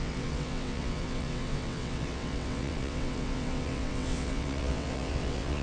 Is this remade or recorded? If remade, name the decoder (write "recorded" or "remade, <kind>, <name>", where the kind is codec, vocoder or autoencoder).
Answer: remade, vocoder, WaveNeXt